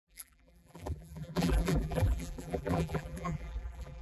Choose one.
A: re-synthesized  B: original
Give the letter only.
A